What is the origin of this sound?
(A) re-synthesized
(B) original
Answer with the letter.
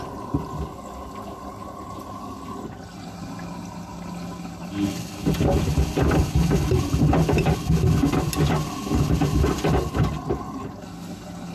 B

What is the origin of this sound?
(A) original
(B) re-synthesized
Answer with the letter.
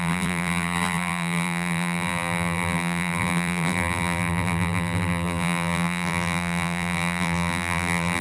B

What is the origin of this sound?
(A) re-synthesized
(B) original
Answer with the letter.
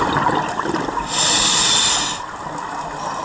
B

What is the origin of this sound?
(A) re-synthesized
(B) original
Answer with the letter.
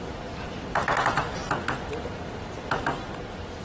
B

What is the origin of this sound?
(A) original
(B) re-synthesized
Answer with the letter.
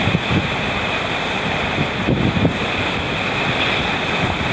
B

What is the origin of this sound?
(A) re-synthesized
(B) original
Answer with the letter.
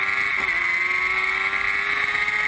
B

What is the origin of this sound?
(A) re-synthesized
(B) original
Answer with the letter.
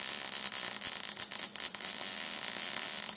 B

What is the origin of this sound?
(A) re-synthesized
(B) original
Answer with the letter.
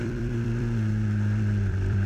A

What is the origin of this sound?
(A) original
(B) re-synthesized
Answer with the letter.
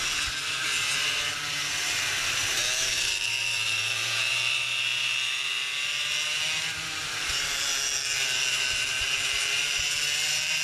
B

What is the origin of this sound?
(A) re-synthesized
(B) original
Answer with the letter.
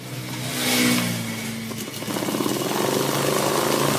B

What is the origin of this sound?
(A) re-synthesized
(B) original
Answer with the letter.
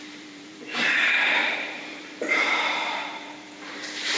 A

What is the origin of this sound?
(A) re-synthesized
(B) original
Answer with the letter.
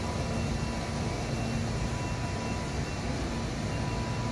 B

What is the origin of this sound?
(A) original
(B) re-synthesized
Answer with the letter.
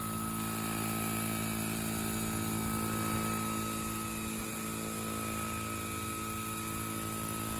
A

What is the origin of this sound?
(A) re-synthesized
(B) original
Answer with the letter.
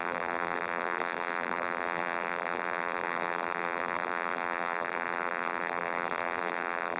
A